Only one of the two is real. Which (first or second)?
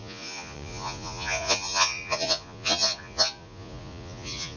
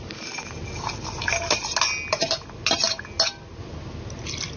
second